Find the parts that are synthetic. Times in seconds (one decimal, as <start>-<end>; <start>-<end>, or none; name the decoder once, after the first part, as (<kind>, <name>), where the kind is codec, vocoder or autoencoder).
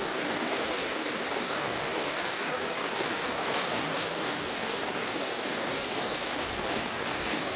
0.0-7.6 (codec, DAC)